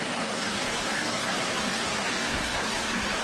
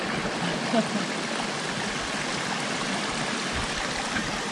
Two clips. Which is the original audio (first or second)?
second